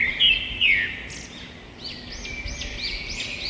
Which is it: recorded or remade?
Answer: recorded